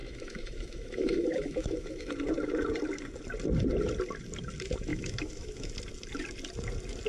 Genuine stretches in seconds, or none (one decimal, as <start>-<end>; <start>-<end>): 2.1-4.9; 5.7-7.1